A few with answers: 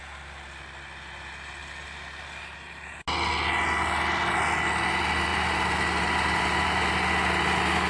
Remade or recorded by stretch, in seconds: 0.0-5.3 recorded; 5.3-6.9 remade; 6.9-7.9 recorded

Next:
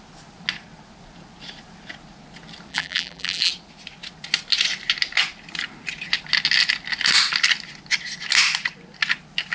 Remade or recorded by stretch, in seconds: 0.0-2.7 recorded; 2.7-3.5 remade; 3.5-9.5 recorded

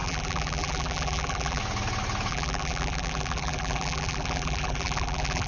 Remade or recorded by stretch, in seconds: 0.0-1.6 remade; 1.6-2.3 recorded; 2.3-5.5 remade

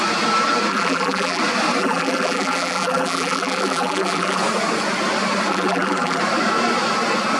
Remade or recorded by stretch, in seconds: 0.0-0.7 recorded; 0.7-1.4 remade; 1.4-1.8 recorded; 1.8-4.4 remade; 4.4-5.5 recorded; 5.5-6.2 remade; 6.2-7.4 recorded

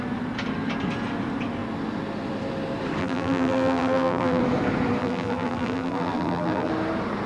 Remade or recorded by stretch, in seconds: 0.0-3.0 recorded; 3.0-4.4 remade; 4.4-5.0 recorded; 5.0-6.7 remade; 6.7-7.3 recorded

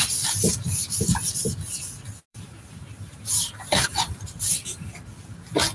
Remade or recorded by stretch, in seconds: 0.0-2.3 recorded; 2.3-5.0 remade; 5.0-5.7 recorded

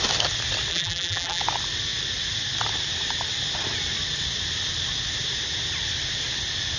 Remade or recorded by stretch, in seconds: 0.0-0.7 recorded; 0.7-1.4 remade; 1.4-6.8 recorded